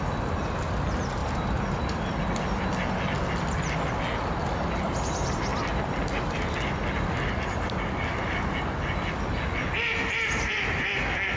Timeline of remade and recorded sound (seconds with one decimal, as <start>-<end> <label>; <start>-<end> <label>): 0.0-1.2 recorded; 1.2-3.2 remade; 3.2-11.4 recorded